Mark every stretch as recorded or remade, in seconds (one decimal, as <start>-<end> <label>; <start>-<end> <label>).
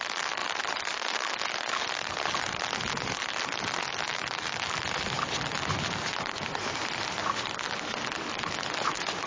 0.0-9.3 recorded